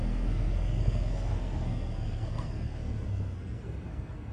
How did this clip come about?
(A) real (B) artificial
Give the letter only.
B